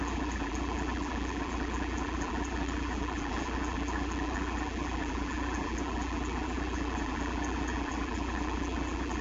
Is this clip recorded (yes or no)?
no